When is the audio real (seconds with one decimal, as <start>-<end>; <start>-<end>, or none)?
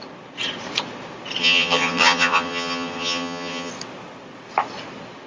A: 0.0-1.4; 3.7-5.3